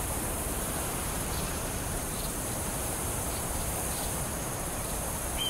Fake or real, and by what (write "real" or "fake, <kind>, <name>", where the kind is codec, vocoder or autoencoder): fake, vocoder, BigVGAN v2